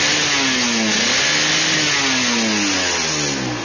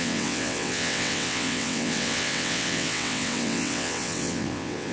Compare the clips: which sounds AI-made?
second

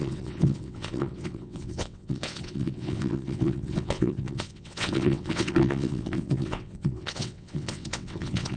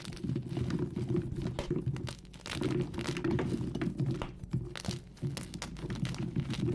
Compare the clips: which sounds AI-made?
first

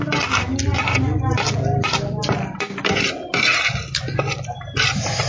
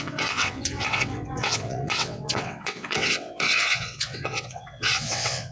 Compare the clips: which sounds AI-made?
second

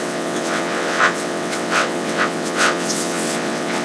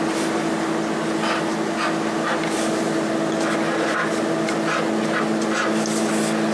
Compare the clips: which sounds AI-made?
first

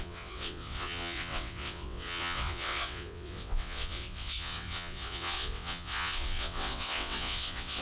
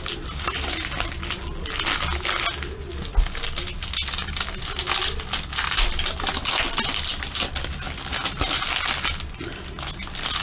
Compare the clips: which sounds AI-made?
first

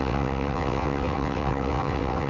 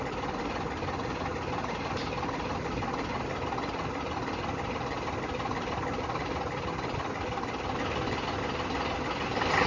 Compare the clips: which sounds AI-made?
first